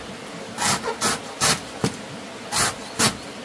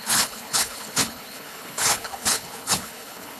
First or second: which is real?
first